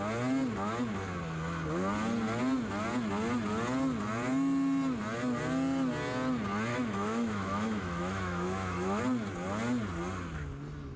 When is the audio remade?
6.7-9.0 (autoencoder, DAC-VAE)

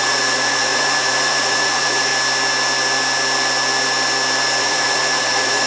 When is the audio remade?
0.0-2.1 (vocoder, Vocos); 4.6-5.7

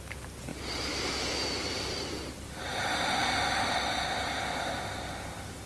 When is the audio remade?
none